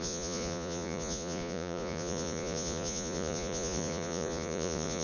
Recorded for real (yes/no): no